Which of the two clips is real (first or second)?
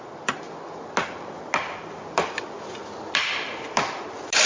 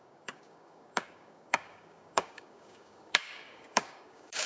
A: first